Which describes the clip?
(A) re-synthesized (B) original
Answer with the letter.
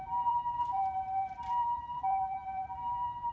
A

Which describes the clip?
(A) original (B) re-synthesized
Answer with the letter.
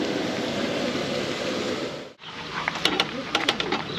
A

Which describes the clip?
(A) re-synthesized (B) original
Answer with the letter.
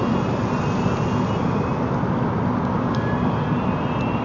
B